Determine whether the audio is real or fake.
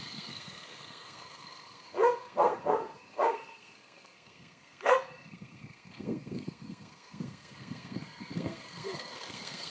fake